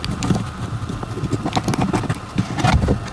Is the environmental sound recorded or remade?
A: recorded